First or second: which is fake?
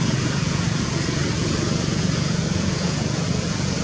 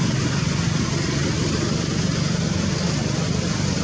first